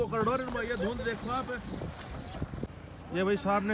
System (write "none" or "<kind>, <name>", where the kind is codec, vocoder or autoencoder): none